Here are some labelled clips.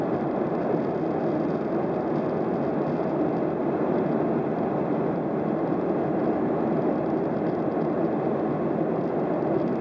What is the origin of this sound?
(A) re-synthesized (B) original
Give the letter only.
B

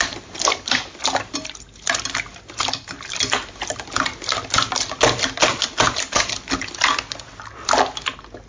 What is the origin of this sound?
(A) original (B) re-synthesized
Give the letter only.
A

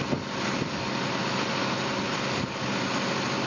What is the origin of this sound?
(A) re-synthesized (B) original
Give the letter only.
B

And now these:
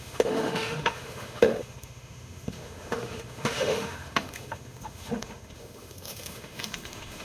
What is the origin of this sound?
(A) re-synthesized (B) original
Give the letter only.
A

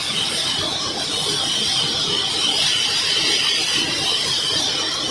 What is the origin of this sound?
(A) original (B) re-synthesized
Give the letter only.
A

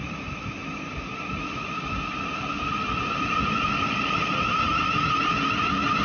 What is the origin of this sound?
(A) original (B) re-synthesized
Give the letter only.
A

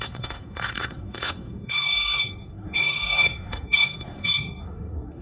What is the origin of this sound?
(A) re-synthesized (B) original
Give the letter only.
A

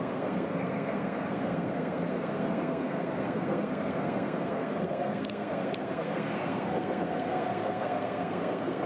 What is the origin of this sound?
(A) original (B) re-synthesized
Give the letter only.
B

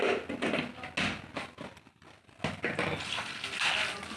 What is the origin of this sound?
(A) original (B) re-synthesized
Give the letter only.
A